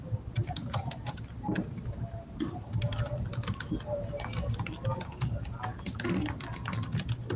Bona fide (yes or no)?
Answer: yes